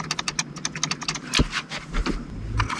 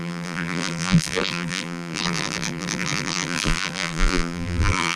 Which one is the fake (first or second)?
second